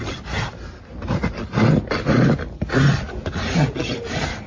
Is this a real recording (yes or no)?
yes